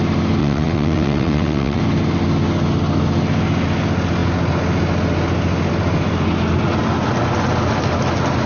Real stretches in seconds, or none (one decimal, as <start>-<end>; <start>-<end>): 0.0-0.4; 1.8-8.5